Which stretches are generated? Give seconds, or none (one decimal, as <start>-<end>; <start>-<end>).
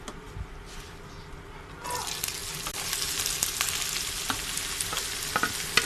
none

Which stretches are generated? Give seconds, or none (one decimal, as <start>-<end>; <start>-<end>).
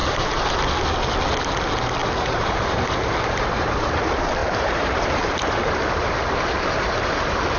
0.0-0.5; 2.0-4.0; 4.4-6.3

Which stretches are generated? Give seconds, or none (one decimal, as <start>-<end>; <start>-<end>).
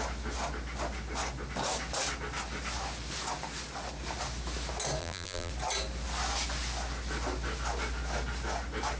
5.0-5.5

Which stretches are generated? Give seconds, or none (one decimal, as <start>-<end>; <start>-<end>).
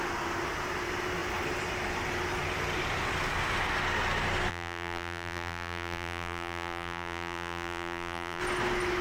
4.5-8.4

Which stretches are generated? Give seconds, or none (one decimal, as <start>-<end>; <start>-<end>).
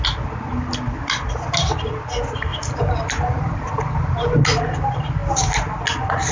2.5-4.4